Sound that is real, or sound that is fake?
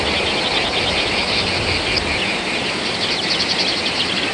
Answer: real